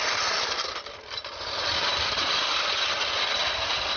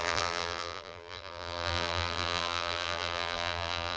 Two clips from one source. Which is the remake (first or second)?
second